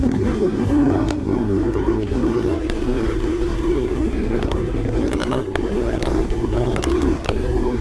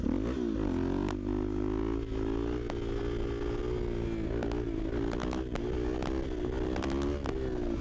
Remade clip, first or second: first